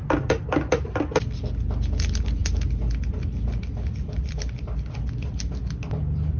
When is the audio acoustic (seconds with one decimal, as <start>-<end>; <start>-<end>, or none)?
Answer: 0.0-6.4